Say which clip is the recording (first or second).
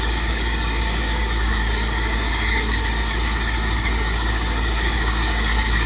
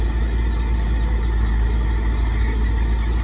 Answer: second